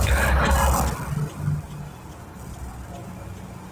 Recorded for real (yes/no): yes